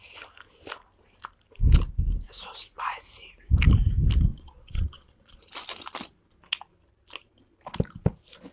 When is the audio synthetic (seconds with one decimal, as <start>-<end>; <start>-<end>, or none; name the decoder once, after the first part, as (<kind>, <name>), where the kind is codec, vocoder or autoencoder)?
4.3-5.4 (vocoder, Vocos)